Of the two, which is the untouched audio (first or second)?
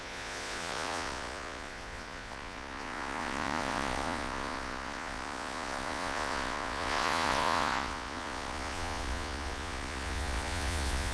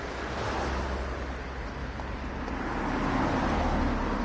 second